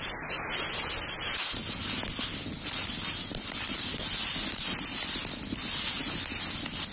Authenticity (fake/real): real